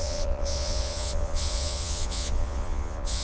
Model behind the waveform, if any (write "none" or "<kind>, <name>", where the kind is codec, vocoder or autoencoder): vocoder, Vocos